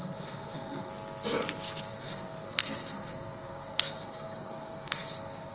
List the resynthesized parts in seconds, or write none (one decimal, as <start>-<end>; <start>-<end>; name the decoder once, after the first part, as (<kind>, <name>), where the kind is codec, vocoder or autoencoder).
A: 0.0-0.9 (codec, SNAC); 1.9-5.5